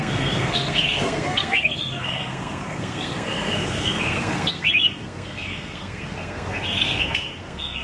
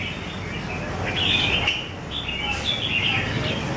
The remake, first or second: first